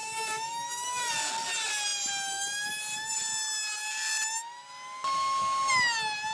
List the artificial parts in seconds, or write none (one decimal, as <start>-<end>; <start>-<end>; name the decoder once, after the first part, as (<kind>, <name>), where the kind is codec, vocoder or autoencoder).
0.0-1.1 (autoencoder, DAC-VAE)